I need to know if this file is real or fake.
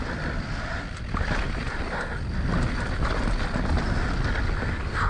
real